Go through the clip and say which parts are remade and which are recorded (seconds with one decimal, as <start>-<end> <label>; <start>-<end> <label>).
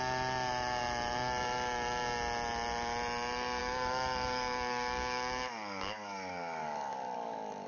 0.0-3.6 recorded; 3.6-7.7 remade